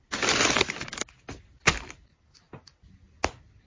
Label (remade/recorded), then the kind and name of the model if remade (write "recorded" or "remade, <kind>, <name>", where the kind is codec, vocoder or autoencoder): recorded